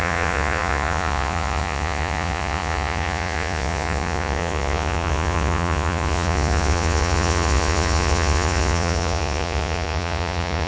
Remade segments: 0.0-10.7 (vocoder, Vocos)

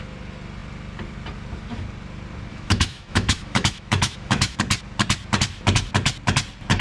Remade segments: 2.5-4.6 (autoencoder, DAC-VAE)